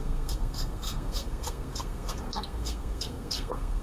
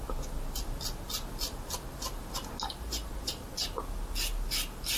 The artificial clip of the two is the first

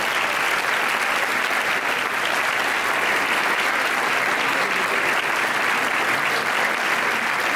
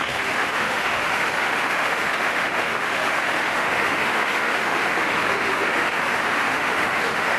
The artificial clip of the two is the second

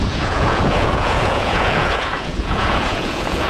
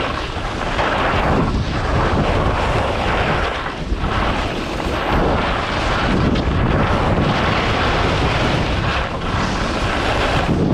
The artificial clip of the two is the first